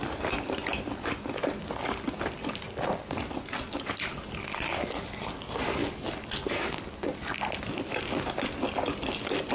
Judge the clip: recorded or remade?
recorded